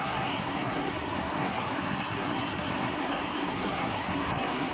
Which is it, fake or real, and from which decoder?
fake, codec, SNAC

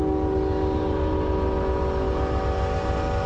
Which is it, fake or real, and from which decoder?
real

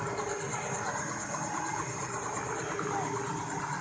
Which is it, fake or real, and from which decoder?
real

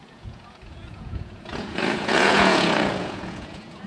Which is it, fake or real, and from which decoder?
fake, vocoder, Vocos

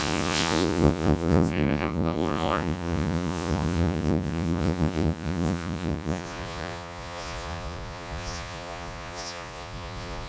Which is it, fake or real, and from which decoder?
fake, vocoder, Vocos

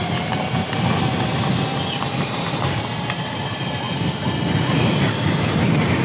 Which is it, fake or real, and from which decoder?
real